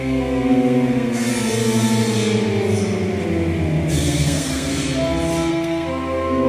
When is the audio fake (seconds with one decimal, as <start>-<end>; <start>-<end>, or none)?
0.0-1.3; 3.9-4.7; 5.5-6.5